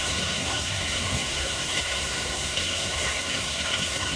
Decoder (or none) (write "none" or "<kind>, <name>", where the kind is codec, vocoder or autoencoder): codec, SNAC